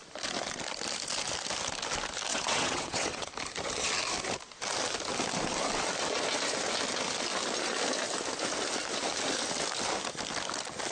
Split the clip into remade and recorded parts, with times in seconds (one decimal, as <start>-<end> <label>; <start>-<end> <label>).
0.0-2.3 recorded; 2.3-3.3 remade; 3.3-10.9 recorded